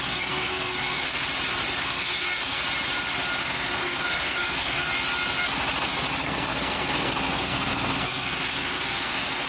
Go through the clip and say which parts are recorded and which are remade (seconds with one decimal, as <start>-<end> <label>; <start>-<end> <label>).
0.0-1.2 remade; 1.2-1.8 recorded; 1.8-2.6 remade; 2.6-3.4 recorded; 3.4-4.9 remade; 4.9-6.2 recorded; 6.2-9.5 remade